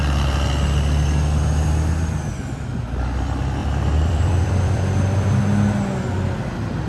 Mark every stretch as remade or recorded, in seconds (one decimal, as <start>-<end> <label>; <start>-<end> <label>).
0.0-3.6 recorded; 3.6-5.4 remade; 5.4-6.9 recorded